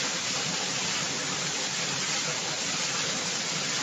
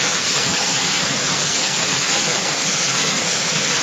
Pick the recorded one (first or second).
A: first